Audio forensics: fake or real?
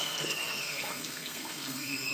fake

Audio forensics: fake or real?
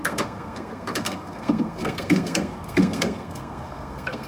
fake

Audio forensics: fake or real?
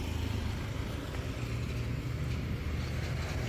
real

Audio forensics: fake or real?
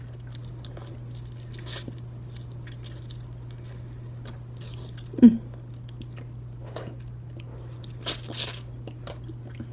real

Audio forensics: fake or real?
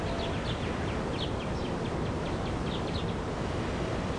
real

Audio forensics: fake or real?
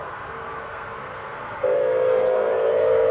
fake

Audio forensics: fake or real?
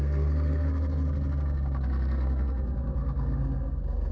fake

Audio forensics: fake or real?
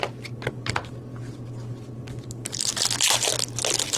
real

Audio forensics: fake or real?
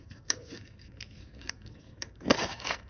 fake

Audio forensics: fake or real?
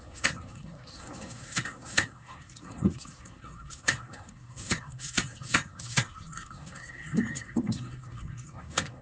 fake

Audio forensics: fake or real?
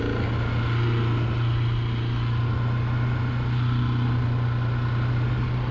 real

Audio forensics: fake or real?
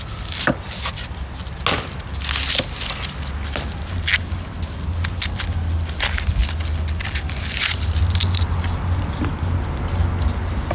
real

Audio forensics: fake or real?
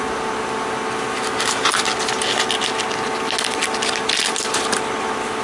real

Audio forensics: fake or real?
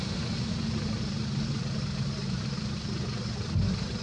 real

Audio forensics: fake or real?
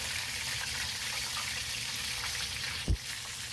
real